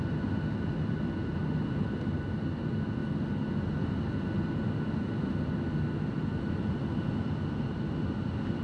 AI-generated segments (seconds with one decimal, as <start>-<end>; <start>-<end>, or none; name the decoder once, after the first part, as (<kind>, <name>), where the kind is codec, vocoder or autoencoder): none